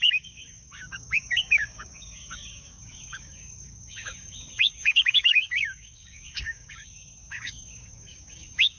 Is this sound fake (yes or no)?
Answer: yes